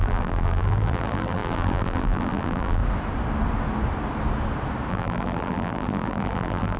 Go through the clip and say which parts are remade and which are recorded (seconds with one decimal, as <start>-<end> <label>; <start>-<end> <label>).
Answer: 0.0-2.8 remade; 2.8-4.9 recorded; 4.9-6.8 remade